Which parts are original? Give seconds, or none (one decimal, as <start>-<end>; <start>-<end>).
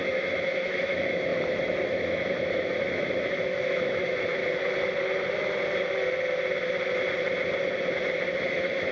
4.4-8.5